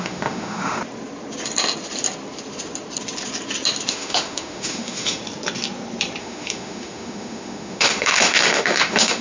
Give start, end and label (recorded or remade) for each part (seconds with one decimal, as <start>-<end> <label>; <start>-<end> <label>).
0.0-0.8 remade; 0.8-3.9 recorded; 3.9-5.2 remade; 5.2-6.2 recorded; 6.2-9.2 remade

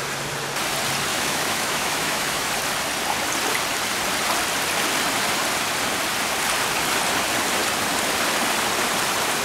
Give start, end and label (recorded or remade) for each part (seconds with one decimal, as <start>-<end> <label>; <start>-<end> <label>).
0.0-1.1 recorded; 1.1-2.5 remade; 2.5-9.4 recorded

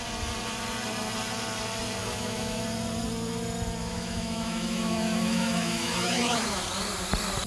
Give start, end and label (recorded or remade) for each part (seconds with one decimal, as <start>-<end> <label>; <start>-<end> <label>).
0.0-2.0 recorded; 2.0-2.6 remade; 2.6-3.8 recorded; 3.8-6.6 remade; 6.6-7.5 recorded

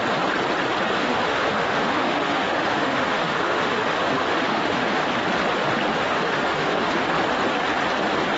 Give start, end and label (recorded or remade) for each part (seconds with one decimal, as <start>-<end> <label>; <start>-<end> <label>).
0.0-1.0 recorded; 1.0-5.0 remade; 5.0-5.9 recorded; 5.9-6.9 remade; 6.9-8.4 recorded